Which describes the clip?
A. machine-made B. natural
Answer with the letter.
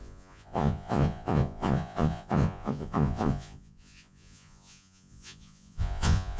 A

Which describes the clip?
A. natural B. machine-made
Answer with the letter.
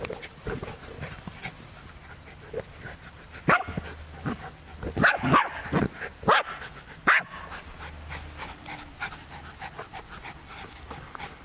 A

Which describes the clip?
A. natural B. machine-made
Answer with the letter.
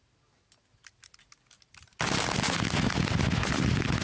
A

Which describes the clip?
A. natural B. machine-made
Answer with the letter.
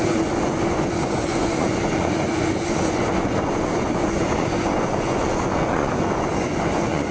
B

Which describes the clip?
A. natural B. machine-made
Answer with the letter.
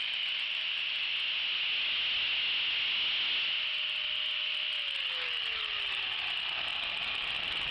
A